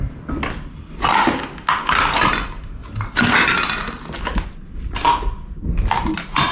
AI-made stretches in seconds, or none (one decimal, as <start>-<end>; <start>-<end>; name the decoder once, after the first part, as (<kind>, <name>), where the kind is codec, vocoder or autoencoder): none